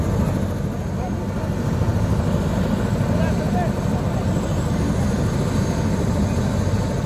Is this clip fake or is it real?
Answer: real